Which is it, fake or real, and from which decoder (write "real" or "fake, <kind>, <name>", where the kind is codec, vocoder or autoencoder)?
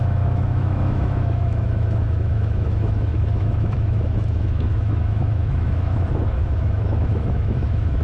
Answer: fake, autoencoder, DAC-VAE